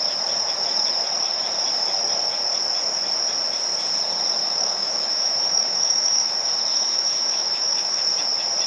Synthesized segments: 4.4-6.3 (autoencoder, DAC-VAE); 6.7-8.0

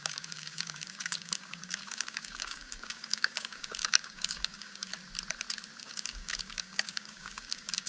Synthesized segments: 0.0-4.9 (codec, DAC); 5.8-7.9

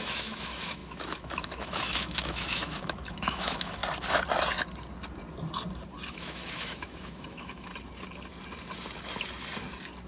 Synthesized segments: 0.0-3.8 (autoencoder, DAC-VAE); 6.1-7.7

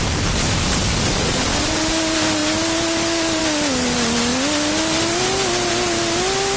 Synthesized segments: none

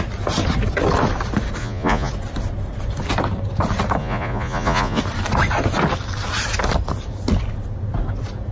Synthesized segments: 1.6-2.1 (vocoder, Vocos); 4.0-5.0

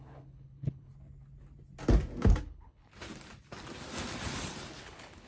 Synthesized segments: 0.0-0.9 (codec, HILCodec); 2.4-2.9; 4.8-5.3

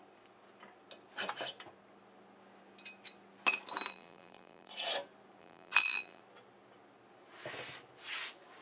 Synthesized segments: 3.9-4.7 (vocoder, BigVGAN v2); 5.4-6.2

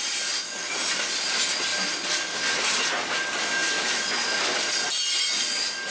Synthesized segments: none